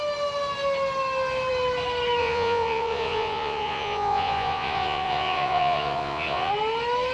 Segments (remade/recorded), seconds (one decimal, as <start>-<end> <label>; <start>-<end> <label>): 0.0-2.2 recorded; 2.2-6.5 remade; 6.5-7.1 recorded